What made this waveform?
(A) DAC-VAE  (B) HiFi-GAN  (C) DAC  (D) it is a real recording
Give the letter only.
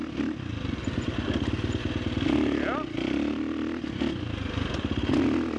D